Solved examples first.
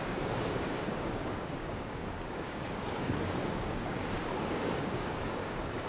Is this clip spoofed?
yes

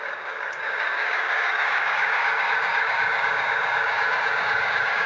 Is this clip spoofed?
yes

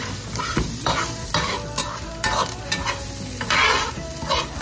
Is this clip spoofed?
no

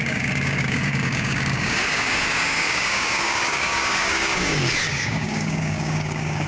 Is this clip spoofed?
yes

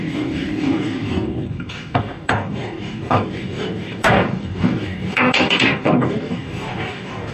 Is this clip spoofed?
yes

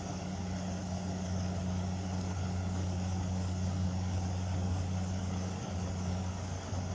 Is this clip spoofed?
yes